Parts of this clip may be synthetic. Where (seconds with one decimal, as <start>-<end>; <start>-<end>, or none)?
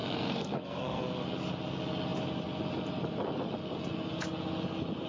0.0-1.0